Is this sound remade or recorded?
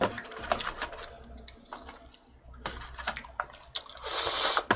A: recorded